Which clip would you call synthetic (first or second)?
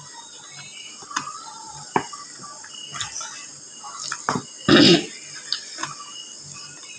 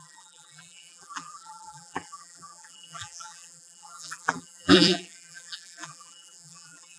second